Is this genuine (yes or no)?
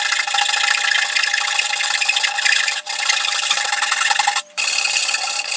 no